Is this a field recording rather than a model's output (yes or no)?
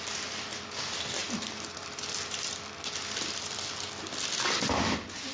yes